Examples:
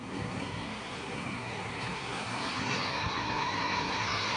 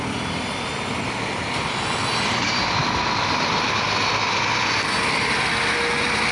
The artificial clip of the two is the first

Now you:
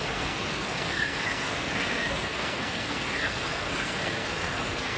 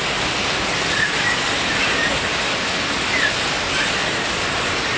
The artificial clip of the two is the first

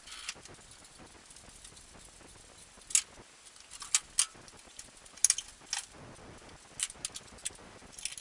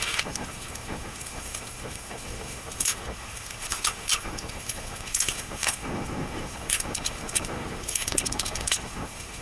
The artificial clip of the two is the second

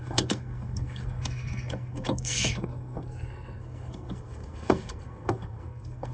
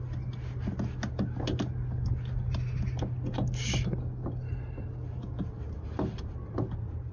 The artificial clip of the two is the first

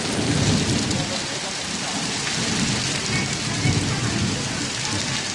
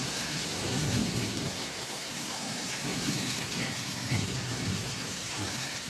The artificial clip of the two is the second